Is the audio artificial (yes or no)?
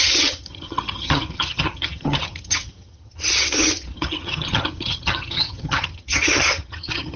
yes